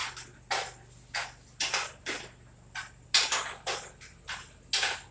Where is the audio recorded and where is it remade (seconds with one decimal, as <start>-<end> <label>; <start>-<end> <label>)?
0.0-5.1 recorded